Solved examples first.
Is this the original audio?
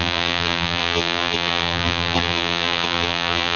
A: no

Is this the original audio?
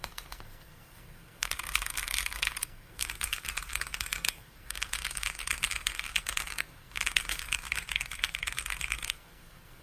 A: no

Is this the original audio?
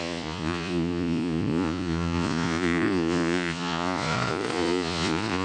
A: no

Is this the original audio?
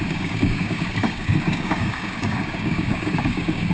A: no